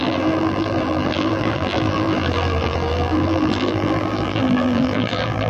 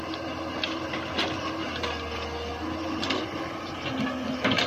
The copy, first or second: first